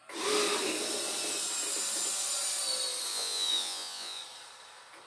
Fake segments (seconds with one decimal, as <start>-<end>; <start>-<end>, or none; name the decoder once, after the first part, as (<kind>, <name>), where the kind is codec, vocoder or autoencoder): 3.1-4.2 (vocoder, Vocos)